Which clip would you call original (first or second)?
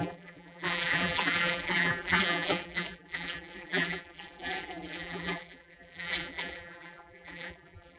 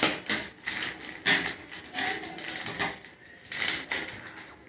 second